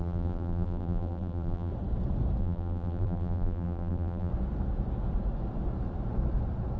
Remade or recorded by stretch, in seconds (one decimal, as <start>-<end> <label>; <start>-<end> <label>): 0.0-1.7 remade; 1.7-2.4 recorded; 2.4-4.3 remade; 4.3-6.8 recorded